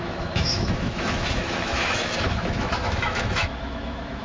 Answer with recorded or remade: remade